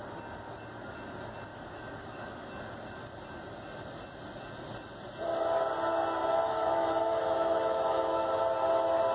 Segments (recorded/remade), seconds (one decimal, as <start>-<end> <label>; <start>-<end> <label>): 0.0-1.5 recorded; 1.5-2.5 remade; 2.5-6.2 recorded; 6.2-8.4 remade; 8.4-9.1 recorded

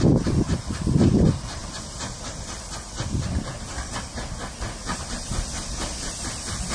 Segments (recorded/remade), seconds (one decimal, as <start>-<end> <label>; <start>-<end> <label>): 0.0-6.7 recorded